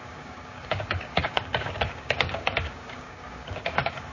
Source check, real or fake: fake